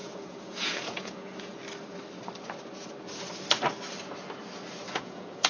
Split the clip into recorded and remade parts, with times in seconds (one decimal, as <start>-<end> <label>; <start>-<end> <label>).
0.0-1.6 remade; 1.6-4.9 recorded; 4.9-5.5 remade